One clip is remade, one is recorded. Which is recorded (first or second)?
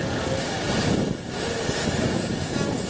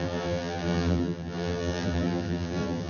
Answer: first